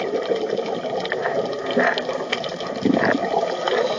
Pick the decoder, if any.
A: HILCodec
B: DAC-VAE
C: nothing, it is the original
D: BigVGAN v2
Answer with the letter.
C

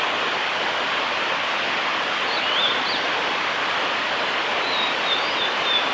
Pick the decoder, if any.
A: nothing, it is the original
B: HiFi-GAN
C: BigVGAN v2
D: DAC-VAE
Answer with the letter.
C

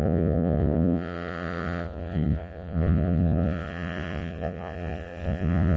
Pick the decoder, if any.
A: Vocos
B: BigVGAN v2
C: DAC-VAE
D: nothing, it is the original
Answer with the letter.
A